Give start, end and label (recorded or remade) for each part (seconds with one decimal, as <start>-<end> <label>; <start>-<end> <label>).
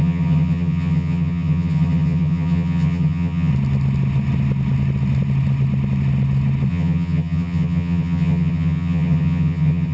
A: 0.0-3.5 remade; 3.5-6.7 recorded; 6.7-9.9 remade